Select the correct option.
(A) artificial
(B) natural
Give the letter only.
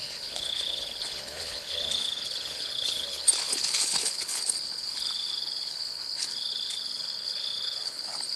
A